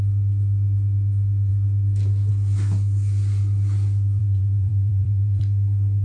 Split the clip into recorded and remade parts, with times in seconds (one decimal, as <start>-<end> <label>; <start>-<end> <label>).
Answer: 0.0-4.2 recorded; 4.2-5.4 remade; 5.4-6.0 recorded